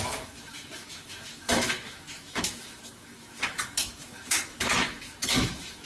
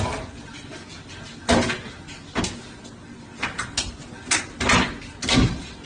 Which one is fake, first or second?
first